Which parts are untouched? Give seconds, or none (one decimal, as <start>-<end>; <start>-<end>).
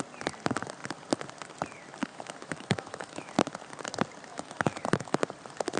0.0-2.1; 3.3-4.3; 5.2-5.8